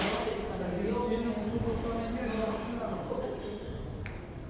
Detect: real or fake real